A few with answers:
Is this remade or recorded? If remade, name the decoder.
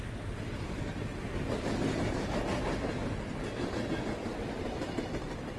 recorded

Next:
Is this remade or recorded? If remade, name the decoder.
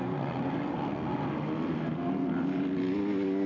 recorded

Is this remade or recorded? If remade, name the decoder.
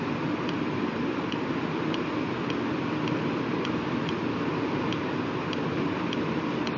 recorded